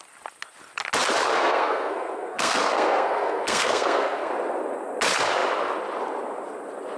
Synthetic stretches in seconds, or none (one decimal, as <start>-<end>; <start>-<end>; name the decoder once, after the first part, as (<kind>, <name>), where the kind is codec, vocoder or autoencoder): 1.3-4.3 (codec, SNAC)